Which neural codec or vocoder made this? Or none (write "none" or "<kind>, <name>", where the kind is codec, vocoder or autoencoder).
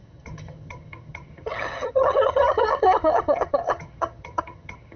vocoder, HiFi-GAN